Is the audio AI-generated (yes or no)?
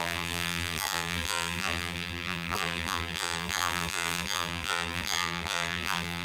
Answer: yes